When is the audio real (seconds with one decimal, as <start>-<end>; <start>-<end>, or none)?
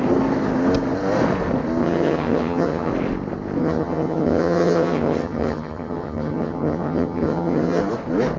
0.0-1.8; 2.9-3.6; 7.8-8.4